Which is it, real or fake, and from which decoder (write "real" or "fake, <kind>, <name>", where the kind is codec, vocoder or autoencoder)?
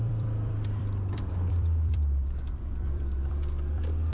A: fake, vocoder, BigVGAN v2